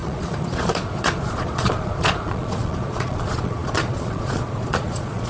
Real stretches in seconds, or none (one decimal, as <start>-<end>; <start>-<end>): none